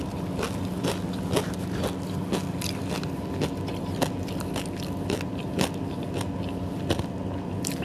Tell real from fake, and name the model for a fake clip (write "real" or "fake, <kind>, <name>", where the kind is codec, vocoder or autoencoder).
real